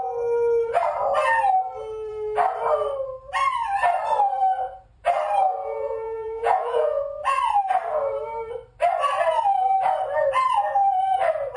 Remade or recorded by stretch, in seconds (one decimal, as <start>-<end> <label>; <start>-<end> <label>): 0.0-5.5 recorded; 5.5-7.4 remade; 7.4-11.6 recorded